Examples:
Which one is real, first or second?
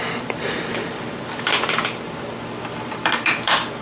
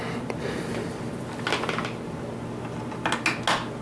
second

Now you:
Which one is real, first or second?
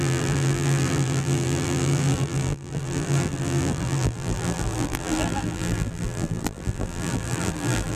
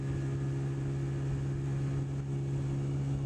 second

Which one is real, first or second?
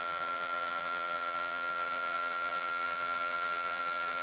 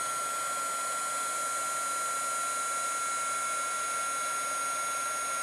second